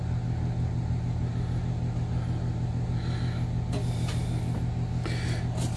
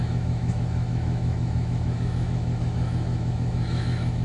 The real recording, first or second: first